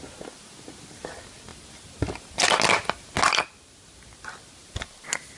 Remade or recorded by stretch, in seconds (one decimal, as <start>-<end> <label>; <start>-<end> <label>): 0.0-5.4 recorded